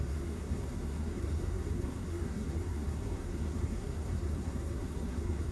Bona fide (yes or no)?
no